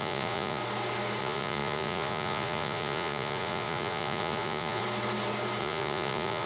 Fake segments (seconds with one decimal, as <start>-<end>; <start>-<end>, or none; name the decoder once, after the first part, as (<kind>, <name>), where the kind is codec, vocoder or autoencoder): 0.0-0.6 (vocoder, Vocos); 1.2-4.8; 5.6-6.5

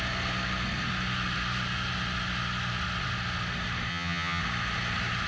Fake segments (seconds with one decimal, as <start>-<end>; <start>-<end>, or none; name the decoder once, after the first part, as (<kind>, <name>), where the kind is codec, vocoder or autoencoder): 3.9-4.4 (vocoder, HiFi-GAN)

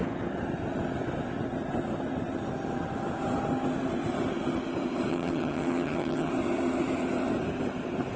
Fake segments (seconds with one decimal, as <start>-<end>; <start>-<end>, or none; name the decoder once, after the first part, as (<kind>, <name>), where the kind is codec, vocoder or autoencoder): 5.1-6.3 (vocoder, HiFi-GAN)

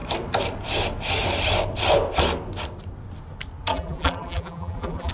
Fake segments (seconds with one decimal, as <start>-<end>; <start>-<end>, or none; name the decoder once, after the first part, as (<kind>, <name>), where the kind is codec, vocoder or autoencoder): 3.7-5.1 (vocoder, BigVGAN v2)

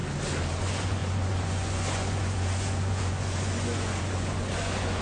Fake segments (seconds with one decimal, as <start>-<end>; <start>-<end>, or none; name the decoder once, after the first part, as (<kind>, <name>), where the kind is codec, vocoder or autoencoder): 0.6-5.0 (vocoder, Vocos)

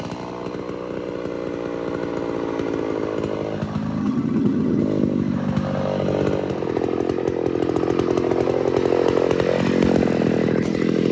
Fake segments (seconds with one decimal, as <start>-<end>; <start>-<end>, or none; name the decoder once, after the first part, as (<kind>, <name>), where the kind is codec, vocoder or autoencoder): 4.0-4.8 (vocoder, HiFi-GAN)

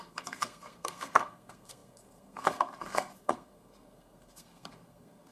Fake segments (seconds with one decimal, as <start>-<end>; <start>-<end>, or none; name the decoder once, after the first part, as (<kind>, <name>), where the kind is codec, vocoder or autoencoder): 0.0-5.3 (codec, SNAC)